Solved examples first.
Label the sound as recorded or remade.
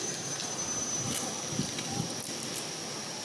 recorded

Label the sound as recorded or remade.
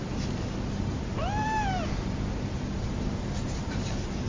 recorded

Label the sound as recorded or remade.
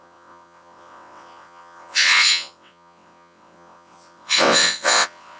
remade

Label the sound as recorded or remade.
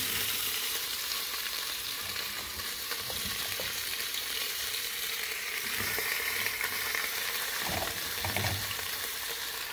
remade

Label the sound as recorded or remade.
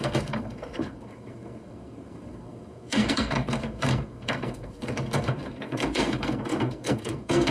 remade